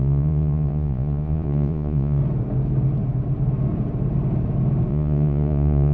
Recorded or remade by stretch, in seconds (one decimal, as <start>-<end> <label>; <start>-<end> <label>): 0.0-2.2 remade; 2.2-4.9 recorded; 4.9-5.9 remade